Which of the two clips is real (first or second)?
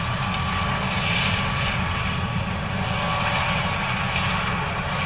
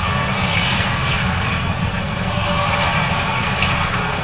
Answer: first